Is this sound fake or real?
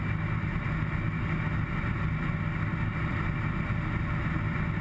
real